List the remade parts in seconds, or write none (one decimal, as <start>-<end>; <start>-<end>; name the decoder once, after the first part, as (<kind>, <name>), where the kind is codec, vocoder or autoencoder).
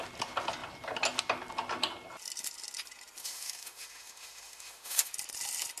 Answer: 3.2-5.1 (autoencoder, DAC-VAE)